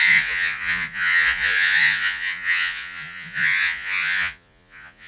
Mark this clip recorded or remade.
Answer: remade